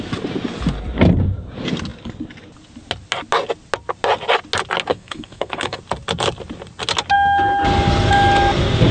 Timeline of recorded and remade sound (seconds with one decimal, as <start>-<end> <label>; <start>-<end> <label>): 0.0-4.9 recorded; 4.9-5.8 remade; 5.8-8.9 recorded